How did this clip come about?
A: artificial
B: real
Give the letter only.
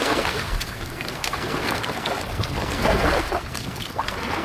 A